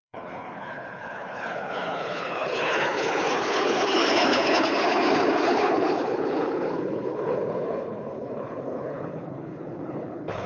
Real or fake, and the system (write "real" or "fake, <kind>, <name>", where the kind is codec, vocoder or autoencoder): fake, codec, HILCodec